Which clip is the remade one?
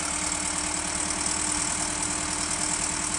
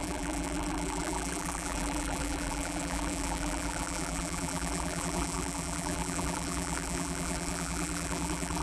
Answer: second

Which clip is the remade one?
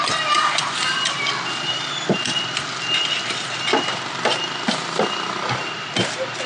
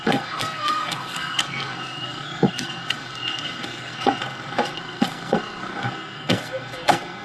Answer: second